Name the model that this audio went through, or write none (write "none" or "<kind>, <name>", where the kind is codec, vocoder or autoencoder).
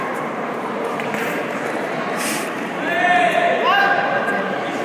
vocoder, BigVGAN v2